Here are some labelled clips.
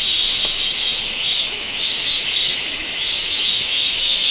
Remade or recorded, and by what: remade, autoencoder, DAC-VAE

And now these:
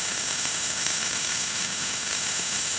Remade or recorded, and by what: remade, autoencoder, DAC-VAE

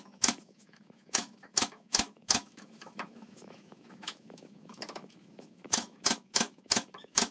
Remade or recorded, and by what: remade, autoencoder, DAC-VAE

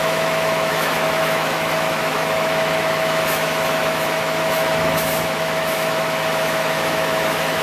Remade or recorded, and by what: remade, autoencoder, DAC-VAE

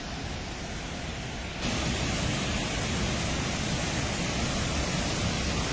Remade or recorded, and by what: recorded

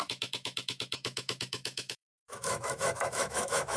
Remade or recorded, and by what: remade, autoencoder, DAC-VAE